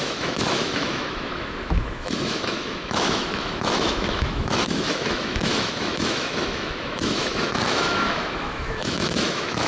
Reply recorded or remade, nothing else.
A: remade